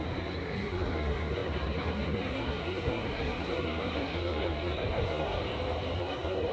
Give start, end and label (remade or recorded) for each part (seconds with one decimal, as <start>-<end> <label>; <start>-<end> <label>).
0.0-5.4 remade; 5.4-6.0 recorded; 6.0-6.5 remade